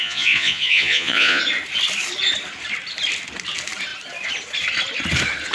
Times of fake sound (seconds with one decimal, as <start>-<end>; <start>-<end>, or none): 0.0-1.4